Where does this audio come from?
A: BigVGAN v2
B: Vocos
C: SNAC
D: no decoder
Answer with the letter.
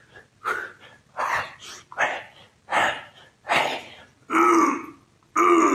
D